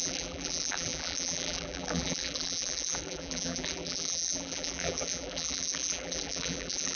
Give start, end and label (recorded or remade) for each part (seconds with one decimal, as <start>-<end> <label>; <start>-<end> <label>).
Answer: 0.0-6.9 remade